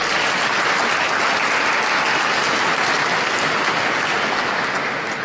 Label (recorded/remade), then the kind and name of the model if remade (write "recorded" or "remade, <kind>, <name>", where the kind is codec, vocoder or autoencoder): recorded